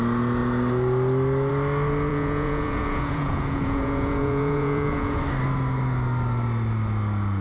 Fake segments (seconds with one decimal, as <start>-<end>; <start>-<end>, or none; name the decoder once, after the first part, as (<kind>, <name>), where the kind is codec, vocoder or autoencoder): 2.1-5.2 (vocoder, Vocos)